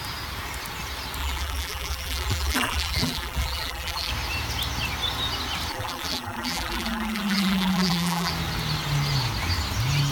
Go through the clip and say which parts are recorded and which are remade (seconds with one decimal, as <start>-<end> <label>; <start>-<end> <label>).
0.0-1.2 recorded; 1.2-4.1 remade; 4.1-5.7 recorded; 5.7-8.3 remade; 8.3-10.1 recorded